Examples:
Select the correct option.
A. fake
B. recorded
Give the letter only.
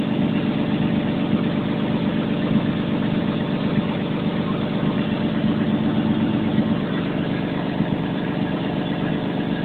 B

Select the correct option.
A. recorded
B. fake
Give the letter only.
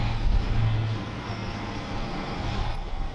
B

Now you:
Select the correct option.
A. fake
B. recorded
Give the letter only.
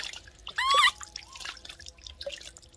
B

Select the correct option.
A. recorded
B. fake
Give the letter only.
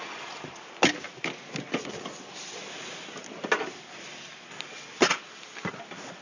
A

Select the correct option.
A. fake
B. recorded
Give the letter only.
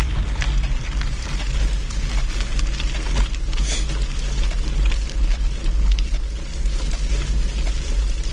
B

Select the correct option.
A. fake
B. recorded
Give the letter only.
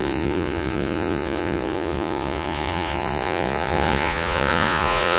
A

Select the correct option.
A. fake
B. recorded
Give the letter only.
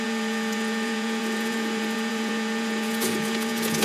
A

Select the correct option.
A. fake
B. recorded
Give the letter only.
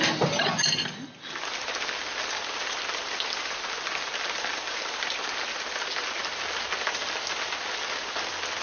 B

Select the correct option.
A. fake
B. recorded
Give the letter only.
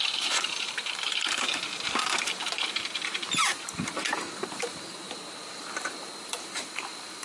A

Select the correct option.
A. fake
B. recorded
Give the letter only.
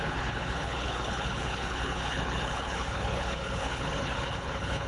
A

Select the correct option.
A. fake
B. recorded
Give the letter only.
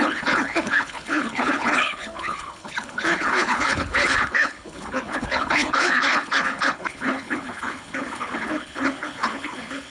A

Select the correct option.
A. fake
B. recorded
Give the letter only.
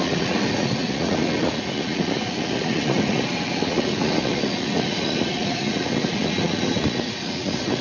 A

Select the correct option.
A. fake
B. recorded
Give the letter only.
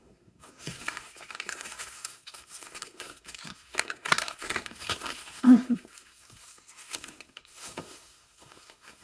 A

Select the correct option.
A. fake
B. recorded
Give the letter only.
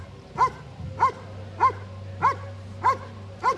B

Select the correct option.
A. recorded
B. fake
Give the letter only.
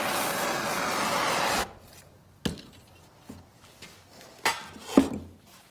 A